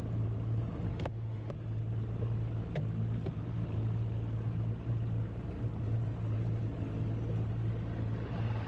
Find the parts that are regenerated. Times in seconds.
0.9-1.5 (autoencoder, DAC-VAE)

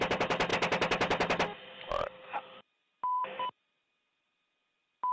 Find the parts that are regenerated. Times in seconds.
none

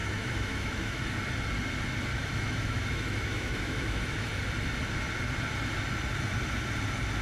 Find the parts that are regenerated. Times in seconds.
0.0-1.0 (autoencoder, DAC-VAE); 2.1-4.3

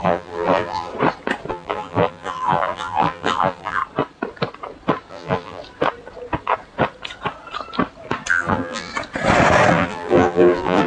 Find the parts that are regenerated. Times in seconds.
0.0-0.9 (vocoder, BigVGAN v2); 1.5-3.8; 5.1-5.6; 8.3-8.9; 9.7-10.9

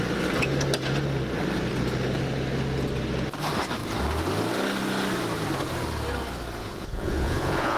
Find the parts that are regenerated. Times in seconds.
6.6-7.8 (vocoder, Vocos)